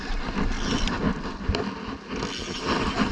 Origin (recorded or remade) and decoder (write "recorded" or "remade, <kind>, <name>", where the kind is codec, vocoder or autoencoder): recorded